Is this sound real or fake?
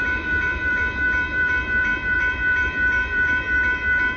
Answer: fake